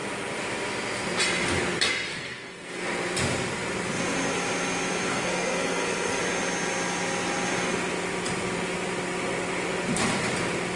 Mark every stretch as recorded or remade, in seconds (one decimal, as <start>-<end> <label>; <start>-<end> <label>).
0.0-2.1 recorded; 2.1-2.9 remade; 2.9-5.1 recorded; 5.1-6.2 remade; 6.2-10.8 recorded